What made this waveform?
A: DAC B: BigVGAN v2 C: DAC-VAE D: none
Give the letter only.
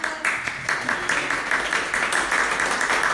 D